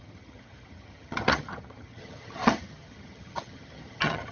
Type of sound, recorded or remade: remade